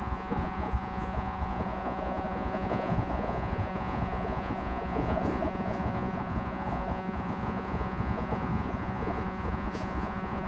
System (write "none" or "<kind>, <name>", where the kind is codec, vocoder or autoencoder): vocoder, Vocos